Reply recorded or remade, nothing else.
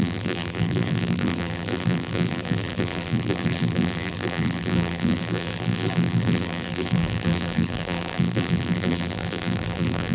remade